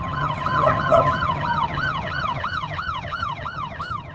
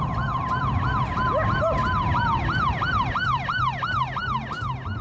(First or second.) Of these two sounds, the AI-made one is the first